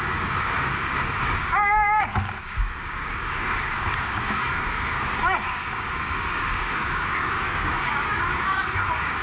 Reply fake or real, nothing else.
fake